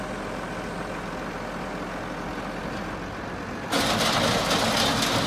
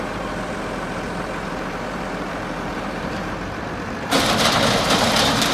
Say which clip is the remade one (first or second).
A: second